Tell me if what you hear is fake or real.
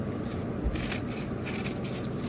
real